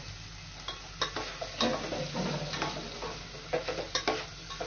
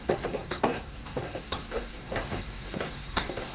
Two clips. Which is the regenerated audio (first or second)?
second